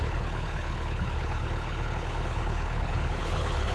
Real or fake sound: fake